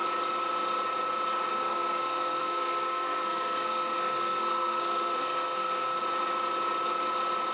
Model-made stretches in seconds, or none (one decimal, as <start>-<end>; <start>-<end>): 1.5-6.0